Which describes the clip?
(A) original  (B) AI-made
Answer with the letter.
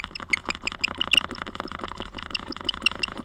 A